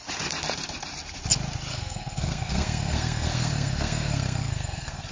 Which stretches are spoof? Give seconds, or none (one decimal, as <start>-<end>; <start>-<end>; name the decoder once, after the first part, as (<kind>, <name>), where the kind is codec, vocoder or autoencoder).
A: 1.7-5.1 (codec, SNAC)